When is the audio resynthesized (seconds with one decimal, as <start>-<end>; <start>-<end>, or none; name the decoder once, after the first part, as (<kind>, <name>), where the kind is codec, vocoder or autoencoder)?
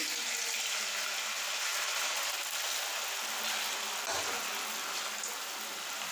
none